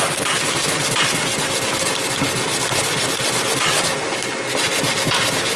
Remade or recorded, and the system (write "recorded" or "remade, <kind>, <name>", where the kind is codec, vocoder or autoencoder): recorded